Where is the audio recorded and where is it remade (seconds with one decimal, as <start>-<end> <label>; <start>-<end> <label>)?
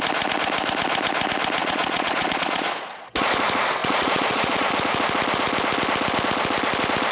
0.0-1.6 recorded; 1.6-3.3 remade; 3.3-3.8 recorded; 3.8-4.7 remade; 4.7-7.1 recorded